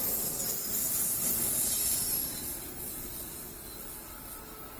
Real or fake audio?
real